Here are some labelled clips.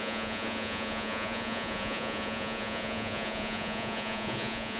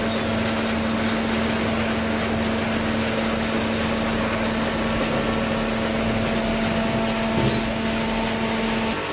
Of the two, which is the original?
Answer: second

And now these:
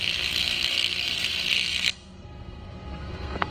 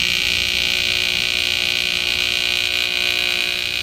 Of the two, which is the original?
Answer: second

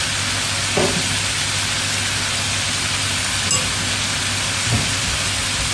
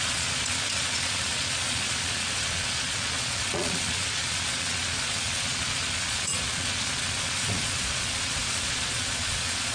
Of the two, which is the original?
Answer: first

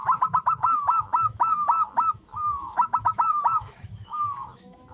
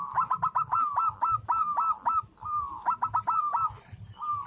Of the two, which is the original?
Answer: second